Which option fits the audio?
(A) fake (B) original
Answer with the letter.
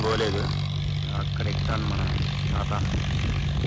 B